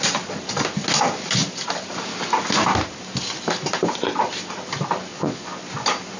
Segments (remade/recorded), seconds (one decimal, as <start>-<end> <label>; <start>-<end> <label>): 0.0-5.1 recorded; 5.1-5.6 remade; 5.6-6.2 recorded